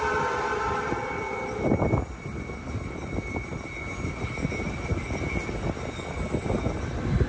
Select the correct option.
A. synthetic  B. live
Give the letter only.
A